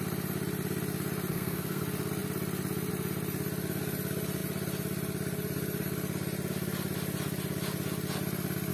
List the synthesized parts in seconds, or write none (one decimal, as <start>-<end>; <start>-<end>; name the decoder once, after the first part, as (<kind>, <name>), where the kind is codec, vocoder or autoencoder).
1.3-1.8 (codec, SNAC)